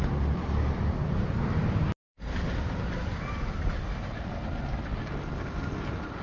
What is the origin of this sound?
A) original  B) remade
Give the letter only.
A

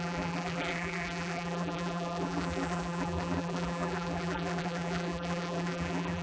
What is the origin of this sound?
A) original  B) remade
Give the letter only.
B